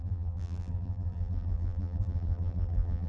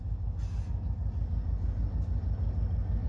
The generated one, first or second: first